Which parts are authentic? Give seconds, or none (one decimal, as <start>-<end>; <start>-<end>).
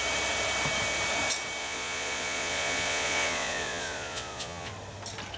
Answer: 0.0-1.6; 4.7-5.4